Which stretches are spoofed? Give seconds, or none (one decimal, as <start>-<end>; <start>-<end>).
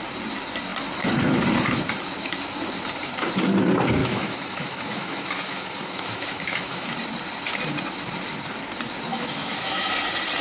4.0-6.9; 9.1-9.9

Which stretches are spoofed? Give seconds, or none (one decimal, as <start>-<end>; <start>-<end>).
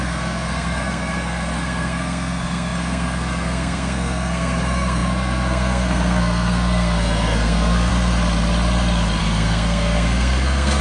0.0-7.9; 9.2-10.8